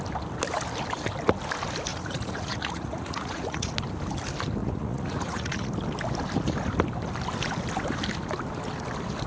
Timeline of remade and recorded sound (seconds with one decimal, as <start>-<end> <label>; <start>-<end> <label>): 0.0-1.9 recorded; 1.9-3.7 remade; 3.7-4.6 recorded; 4.6-5.7 remade; 5.7-9.3 recorded